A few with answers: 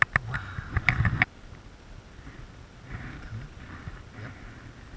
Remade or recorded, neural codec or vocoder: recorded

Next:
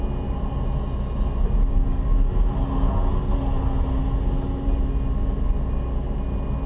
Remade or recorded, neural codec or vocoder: recorded